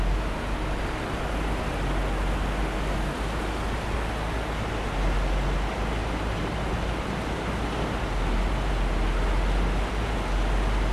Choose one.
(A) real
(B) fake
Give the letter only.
A